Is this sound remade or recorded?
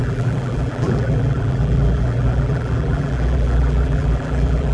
remade